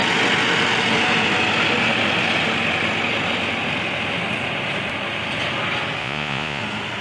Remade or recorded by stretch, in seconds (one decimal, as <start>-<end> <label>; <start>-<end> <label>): 0.0-6.0 recorded; 6.0-6.6 remade; 6.6-7.0 recorded